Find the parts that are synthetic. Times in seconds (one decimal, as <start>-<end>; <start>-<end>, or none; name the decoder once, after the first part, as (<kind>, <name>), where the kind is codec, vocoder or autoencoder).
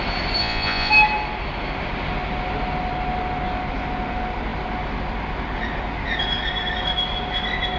0.4-0.9 (vocoder, Vocos)